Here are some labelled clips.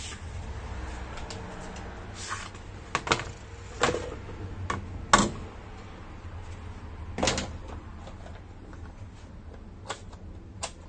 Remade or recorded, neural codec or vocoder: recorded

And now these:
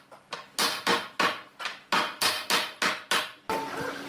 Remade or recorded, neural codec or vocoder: recorded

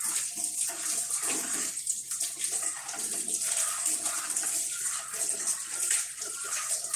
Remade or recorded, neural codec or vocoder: recorded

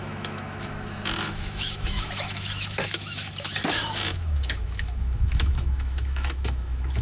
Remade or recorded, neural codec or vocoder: remade, autoencoder, DAC-VAE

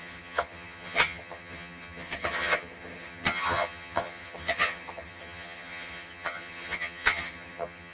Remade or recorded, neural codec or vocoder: remade, vocoder, HiFi-GAN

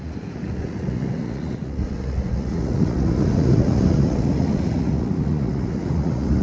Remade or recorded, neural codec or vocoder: remade, vocoder, Vocos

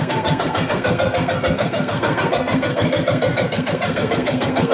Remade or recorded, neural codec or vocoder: remade, codec, SNAC